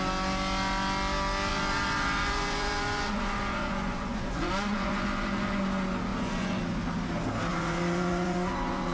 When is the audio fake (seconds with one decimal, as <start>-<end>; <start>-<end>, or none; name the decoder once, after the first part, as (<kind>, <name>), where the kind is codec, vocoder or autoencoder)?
1.5-5.6 (vocoder, Vocos); 6.1-6.6; 7.5-8.9